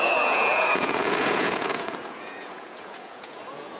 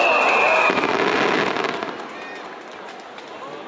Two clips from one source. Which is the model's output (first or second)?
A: first